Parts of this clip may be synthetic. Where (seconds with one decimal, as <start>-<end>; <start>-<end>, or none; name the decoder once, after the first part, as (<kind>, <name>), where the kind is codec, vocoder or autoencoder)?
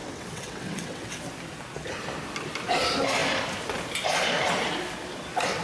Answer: 0.0-1.2 (vocoder, WaveNeXt)